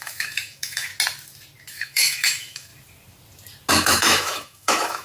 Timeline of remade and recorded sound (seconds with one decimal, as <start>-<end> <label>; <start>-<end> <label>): 0.0-0.9 remade; 0.9-1.7 recorded; 1.7-2.7 remade; 2.7-3.7 recorded; 3.7-5.0 remade